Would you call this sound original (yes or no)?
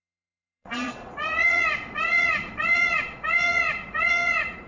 no